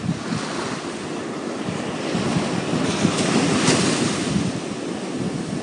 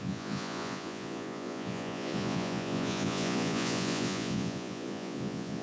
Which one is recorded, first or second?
first